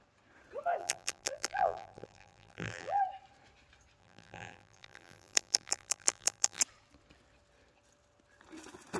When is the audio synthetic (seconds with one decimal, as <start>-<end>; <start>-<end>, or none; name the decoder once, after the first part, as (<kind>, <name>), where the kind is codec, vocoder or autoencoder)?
0.8-3.0 (vocoder, BigVGAN v2); 4.0-6.6